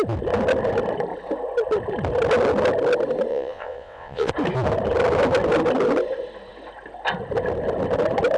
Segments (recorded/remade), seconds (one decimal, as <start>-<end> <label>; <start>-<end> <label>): 0.0-3.3 recorded; 3.3-4.3 remade; 4.3-8.4 recorded